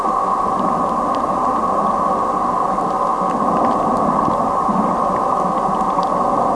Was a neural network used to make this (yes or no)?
no